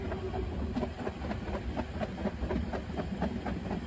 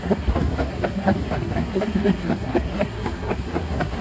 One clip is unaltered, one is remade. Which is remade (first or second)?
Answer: second